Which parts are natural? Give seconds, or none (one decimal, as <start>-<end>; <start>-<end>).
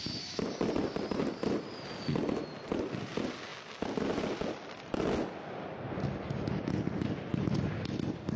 0.0-8.4